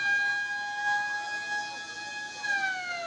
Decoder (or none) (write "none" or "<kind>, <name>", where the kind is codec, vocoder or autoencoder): none